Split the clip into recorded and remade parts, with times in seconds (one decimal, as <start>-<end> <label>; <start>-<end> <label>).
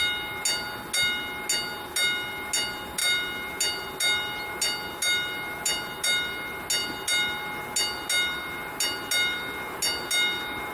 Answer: 0.0-10.7 recorded